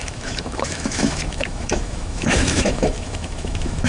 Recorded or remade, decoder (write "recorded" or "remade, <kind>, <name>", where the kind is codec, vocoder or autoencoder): remade, autoencoder, DAC-VAE